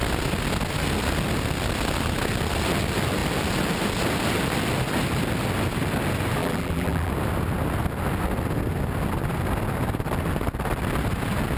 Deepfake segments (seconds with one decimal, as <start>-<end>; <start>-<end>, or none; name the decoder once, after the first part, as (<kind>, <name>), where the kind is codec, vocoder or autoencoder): 6.4-7.1 (vocoder, BigVGAN v2)